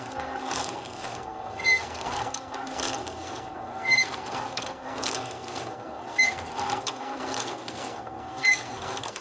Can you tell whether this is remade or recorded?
remade